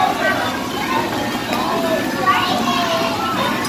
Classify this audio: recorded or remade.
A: recorded